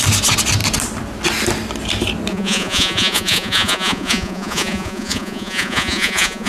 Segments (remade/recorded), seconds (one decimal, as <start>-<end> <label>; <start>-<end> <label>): 0.0-2.3 recorded; 2.3-6.5 remade